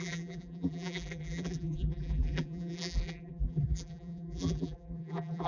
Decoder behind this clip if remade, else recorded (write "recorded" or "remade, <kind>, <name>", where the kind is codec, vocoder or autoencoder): remade, vocoder, BigVGAN v2